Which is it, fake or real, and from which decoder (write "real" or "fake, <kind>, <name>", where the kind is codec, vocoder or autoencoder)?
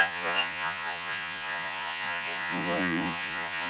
fake, vocoder, Vocos